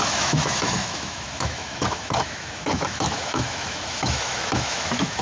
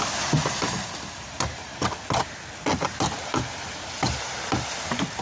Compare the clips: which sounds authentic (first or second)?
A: second